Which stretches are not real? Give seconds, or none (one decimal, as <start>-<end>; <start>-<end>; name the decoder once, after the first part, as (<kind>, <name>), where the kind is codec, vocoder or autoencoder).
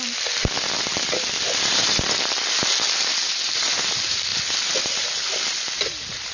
0.9-3.2 (vocoder, BigVGAN v2); 4.3-6.3